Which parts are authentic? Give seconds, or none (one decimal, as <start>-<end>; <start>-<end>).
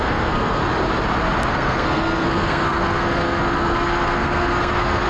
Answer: 0.6-1.5